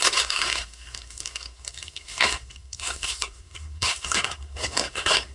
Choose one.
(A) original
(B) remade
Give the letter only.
B